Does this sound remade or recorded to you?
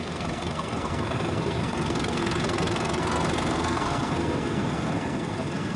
remade